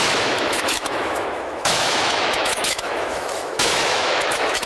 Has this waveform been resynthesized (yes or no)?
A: yes